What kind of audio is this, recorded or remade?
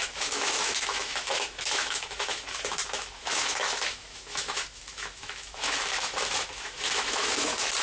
remade